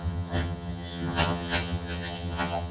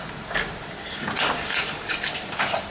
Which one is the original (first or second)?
second